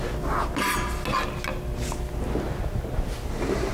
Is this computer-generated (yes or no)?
no